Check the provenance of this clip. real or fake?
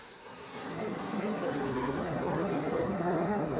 fake